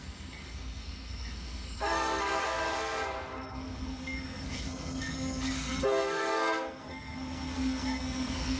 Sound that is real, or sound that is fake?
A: fake